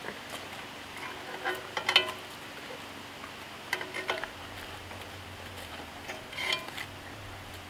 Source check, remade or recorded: recorded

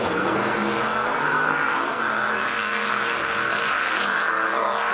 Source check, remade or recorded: remade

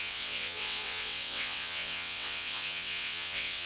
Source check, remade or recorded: remade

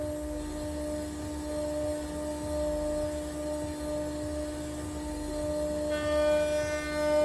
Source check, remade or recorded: recorded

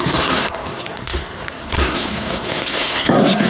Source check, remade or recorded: remade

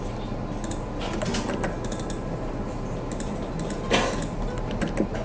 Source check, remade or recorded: recorded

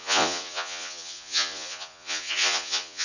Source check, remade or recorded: remade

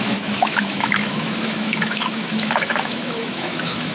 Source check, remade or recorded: remade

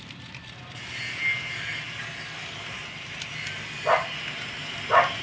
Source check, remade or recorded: recorded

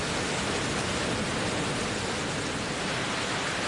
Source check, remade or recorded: recorded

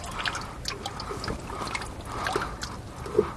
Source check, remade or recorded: recorded